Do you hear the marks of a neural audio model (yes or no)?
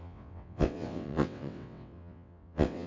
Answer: yes